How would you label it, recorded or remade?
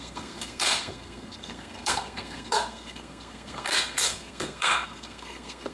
remade